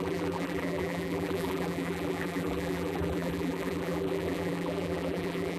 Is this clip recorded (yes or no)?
no